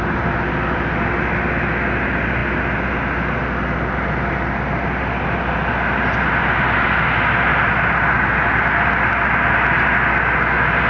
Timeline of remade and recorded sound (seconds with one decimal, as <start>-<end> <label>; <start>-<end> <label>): 0.0-10.9 recorded